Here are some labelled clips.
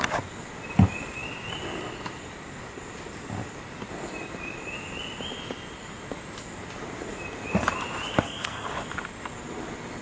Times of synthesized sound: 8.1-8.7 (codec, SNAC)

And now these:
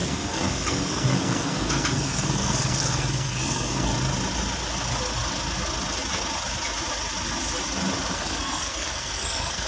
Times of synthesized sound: 0.0-3.9 (codec, SNAC); 8.1-9.7